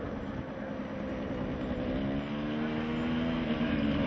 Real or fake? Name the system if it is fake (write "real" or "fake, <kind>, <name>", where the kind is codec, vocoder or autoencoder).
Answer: real